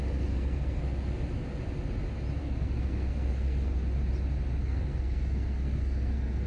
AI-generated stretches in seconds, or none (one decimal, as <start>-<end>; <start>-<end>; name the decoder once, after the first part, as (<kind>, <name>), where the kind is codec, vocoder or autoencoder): 0.0-0.8 (codec, SNAC); 2.4-3.8; 4.6-6.5